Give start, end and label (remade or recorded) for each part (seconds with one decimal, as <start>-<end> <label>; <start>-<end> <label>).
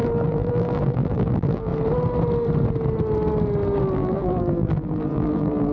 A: 0.0-1.7 remade; 1.7-3.8 recorded; 3.8-5.7 remade